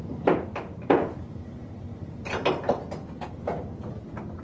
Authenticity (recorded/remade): recorded